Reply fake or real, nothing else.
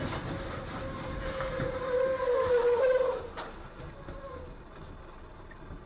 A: real